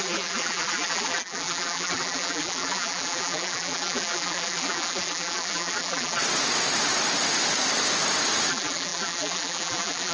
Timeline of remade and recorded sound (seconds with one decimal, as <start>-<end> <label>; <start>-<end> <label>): 0.0-6.2 remade; 6.2-8.5 recorded; 8.5-10.1 remade